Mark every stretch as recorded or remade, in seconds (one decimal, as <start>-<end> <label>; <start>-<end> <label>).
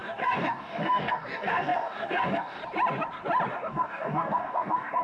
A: 0.0-2.6 remade; 2.6-3.5 recorded; 3.5-5.0 remade